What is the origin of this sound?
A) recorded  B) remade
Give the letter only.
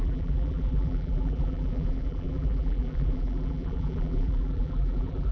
B